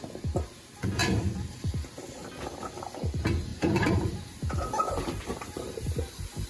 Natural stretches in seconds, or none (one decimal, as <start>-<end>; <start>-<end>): 0.0-1.0; 1.7-3.5; 4.2-5.3; 5.9-6.5